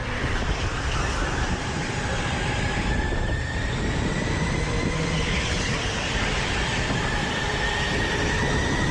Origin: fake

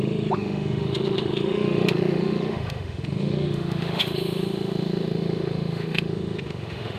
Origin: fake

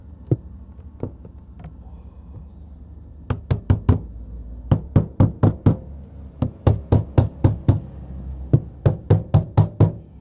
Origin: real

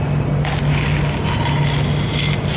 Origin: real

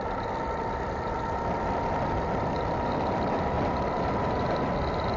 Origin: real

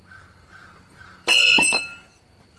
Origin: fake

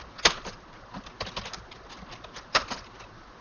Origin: real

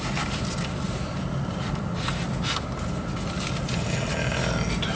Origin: real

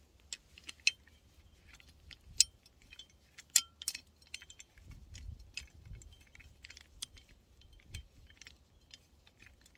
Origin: real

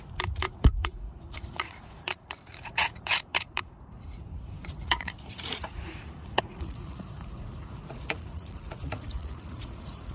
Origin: fake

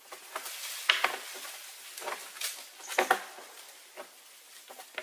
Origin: real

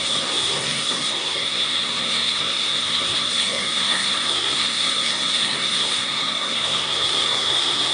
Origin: fake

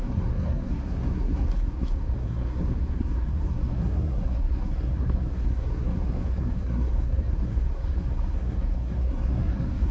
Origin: fake